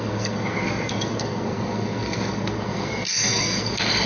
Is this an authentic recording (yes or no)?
no